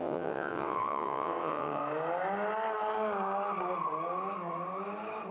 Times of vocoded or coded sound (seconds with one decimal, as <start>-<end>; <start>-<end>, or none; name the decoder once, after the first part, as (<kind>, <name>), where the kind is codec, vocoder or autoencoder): 0.0-1.8 (vocoder, WaveNeXt)